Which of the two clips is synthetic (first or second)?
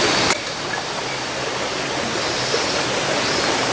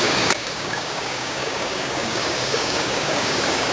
second